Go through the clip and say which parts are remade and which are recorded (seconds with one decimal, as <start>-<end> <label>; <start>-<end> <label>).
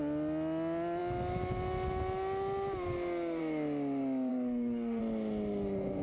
0.0-4.3 recorded; 4.3-5.0 remade; 5.0-6.0 recorded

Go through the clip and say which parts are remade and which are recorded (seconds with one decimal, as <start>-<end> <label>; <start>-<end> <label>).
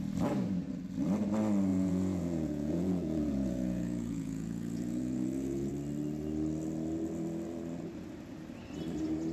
0.0-1.7 recorded; 1.7-5.7 remade; 5.7-9.3 recorded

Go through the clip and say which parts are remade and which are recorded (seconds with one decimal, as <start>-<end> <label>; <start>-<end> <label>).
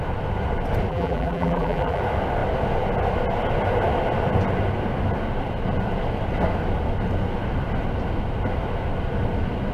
0.0-0.9 recorded; 0.9-2.0 remade; 2.0-9.7 recorded